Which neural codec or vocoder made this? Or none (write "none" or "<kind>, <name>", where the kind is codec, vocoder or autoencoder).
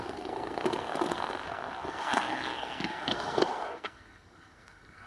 codec, SNAC